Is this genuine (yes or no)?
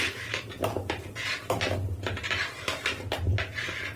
yes